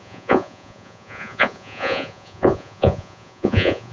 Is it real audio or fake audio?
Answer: fake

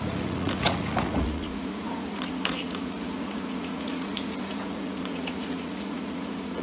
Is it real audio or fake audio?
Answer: fake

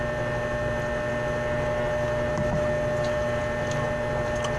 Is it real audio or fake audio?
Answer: real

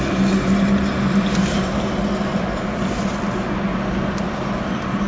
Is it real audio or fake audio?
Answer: real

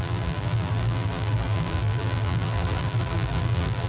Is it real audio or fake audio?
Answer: fake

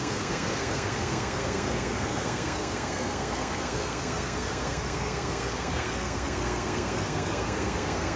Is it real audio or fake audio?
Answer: fake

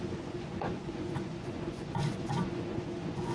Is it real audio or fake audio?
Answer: fake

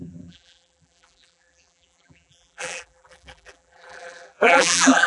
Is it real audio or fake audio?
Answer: fake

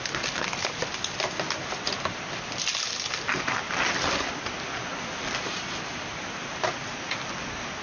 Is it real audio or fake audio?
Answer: real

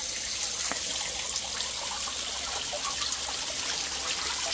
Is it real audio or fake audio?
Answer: real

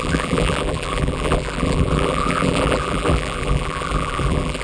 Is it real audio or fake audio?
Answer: fake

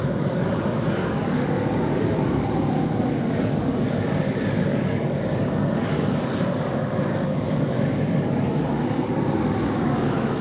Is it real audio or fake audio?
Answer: fake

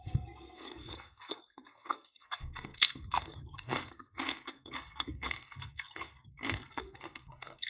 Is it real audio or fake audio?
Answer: fake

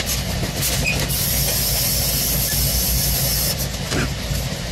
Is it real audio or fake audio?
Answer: real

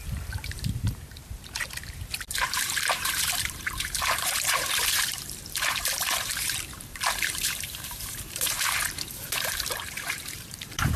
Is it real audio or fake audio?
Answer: fake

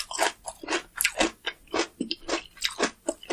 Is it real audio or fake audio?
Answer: real